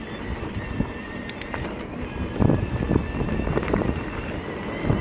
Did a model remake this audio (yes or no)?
no